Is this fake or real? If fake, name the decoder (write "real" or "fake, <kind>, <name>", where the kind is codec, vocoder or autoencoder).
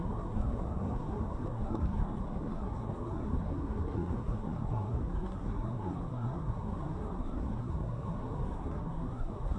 fake, codec, SNAC